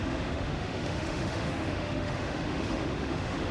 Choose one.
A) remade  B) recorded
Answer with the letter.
A